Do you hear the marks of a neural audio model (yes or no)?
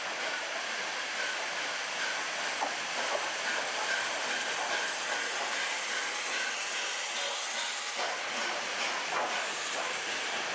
no